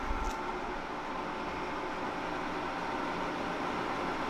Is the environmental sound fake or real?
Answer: real